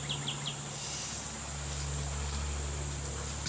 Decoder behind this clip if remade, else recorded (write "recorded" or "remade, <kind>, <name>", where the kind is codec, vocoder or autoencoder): recorded